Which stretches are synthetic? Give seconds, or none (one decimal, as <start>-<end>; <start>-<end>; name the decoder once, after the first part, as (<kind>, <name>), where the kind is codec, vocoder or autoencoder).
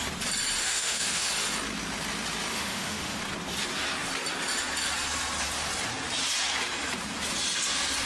0.6-1.3 (autoencoder, DAC-VAE); 2.5-3.2